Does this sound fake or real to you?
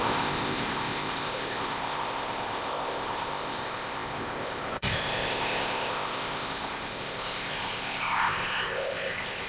fake